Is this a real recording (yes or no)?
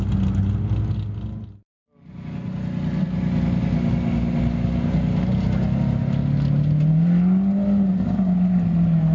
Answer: yes